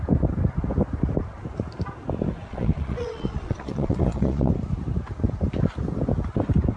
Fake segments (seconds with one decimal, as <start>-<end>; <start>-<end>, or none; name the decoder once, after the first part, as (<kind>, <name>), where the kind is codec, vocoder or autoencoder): 2.4-4.5 (vocoder, Vocos)